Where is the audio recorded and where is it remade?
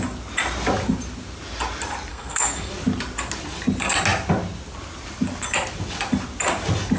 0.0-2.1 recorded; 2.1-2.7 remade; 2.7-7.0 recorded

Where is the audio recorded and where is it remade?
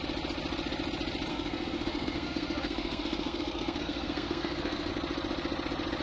0.0-1.3 recorded; 1.3-4.9 remade; 4.9-6.0 recorded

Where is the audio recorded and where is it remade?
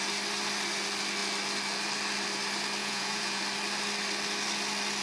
0.0-2.8 recorded; 2.8-3.4 remade; 3.4-5.0 recorded